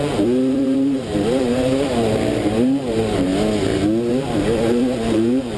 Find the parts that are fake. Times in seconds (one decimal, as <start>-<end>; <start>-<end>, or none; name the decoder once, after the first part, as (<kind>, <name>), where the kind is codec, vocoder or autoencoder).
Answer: 0.0-3.3 (vocoder, BigVGAN v2); 4.1-5.6